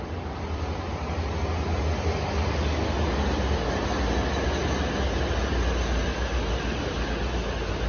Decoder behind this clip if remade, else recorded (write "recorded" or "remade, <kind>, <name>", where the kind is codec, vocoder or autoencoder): recorded